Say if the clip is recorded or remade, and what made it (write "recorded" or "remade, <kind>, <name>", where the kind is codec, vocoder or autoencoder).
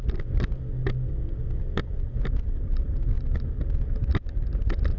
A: recorded